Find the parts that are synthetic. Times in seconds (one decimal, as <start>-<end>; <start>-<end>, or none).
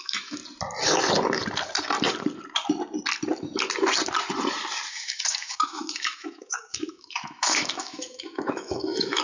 0.0-0.4; 4.9-9.2